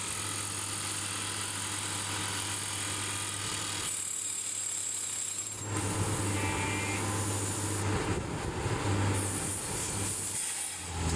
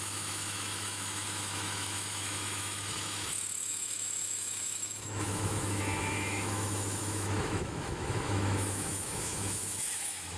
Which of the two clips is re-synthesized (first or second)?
second